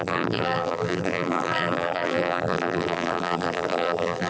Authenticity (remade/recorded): remade